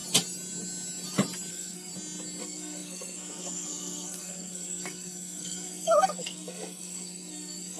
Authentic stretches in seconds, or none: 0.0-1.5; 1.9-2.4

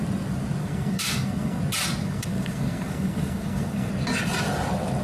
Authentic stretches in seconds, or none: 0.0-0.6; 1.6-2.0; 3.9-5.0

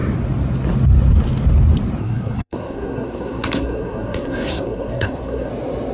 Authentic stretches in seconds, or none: 0.0-2.0; 5.5-5.9

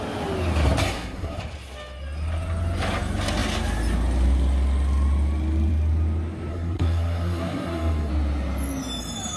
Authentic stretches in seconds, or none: 0.0-0.8; 1.4-6.5; 8.1-9.4

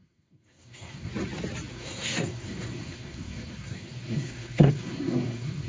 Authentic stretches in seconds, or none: 1.1-1.7

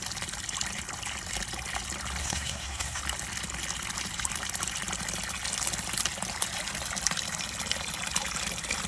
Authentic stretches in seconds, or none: 0.0-2.2; 3.0-8.9

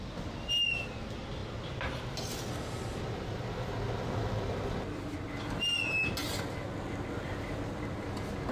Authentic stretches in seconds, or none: 0.0-8.5

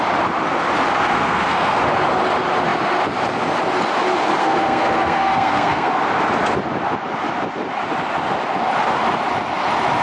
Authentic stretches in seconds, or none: 0.0-1.1; 1.8-4.4; 5.9-10.0